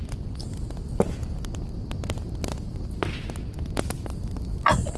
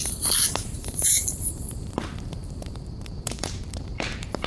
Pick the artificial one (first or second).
second